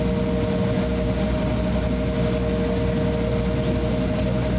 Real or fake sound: real